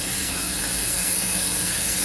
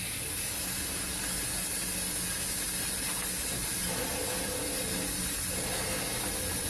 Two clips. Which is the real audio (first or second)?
second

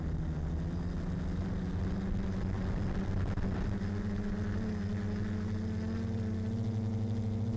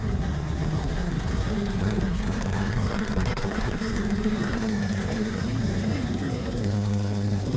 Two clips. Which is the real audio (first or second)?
first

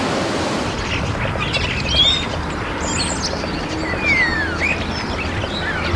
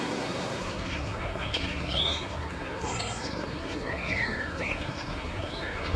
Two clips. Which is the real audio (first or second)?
first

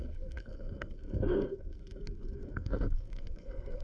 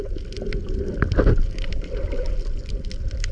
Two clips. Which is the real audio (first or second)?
second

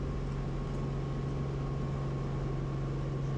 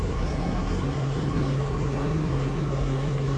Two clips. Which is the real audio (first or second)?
first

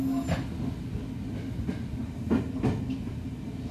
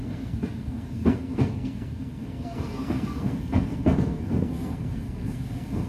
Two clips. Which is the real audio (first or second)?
first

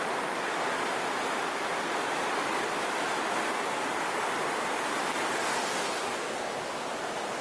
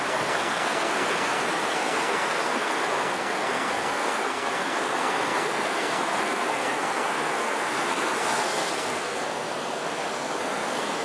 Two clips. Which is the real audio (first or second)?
first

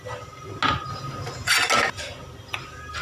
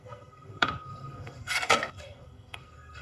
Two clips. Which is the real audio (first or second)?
first